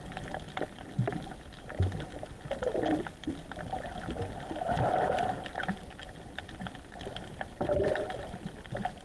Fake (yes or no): no